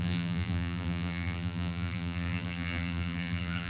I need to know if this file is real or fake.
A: fake